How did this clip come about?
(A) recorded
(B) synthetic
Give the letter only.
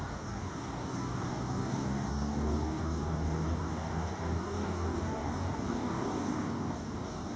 B